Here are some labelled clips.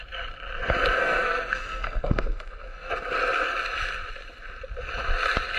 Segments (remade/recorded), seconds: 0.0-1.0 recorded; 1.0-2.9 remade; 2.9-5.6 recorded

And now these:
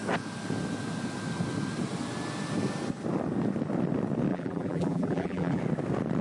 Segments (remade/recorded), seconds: 0.0-4.3 recorded; 4.3-5.6 remade; 5.6-6.2 recorded

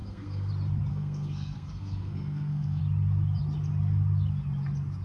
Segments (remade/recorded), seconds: 0.0-0.5 remade; 0.5-0.9 recorded; 0.9-2.8 remade; 2.8-5.0 recorded

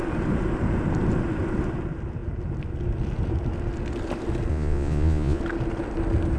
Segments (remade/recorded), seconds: 0.0-4.5 recorded; 4.5-5.4 remade; 5.4-6.4 recorded

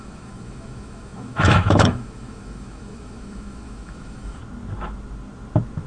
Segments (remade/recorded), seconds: 0.0-4.4 remade; 4.4-5.9 recorded